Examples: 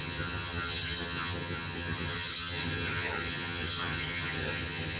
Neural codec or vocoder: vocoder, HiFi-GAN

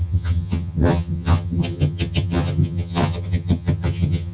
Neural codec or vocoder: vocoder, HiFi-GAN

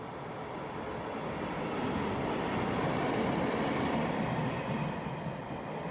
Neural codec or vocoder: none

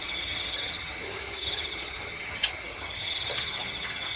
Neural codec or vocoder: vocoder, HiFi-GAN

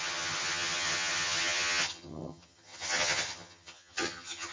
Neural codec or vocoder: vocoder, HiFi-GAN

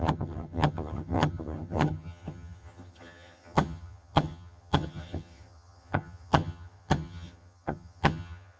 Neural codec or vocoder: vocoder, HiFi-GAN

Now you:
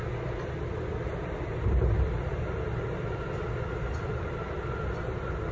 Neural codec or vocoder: none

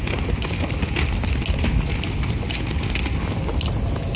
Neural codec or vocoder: none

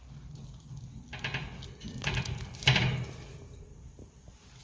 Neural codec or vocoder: none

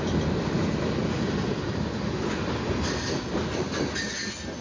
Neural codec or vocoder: none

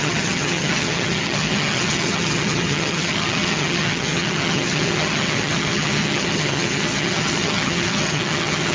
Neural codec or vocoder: vocoder, HiFi-GAN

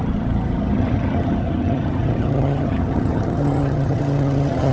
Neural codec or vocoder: vocoder, HiFi-GAN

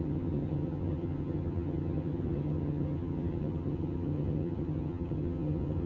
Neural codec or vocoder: vocoder, HiFi-GAN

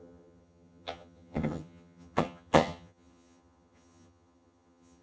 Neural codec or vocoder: vocoder, HiFi-GAN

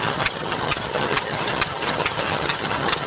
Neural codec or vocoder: vocoder, HiFi-GAN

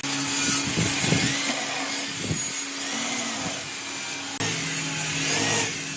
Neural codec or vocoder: none